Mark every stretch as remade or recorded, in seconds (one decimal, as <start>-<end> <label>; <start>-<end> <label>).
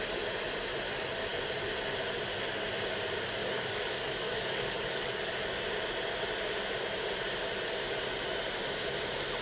0.0-3.4 recorded; 3.4-5.3 remade; 5.3-9.4 recorded